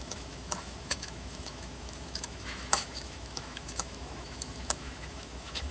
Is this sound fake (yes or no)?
yes